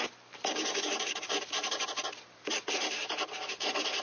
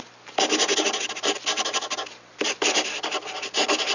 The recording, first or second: second